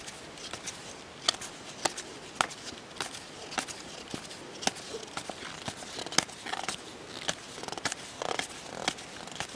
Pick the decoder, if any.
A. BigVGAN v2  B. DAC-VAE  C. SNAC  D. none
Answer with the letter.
D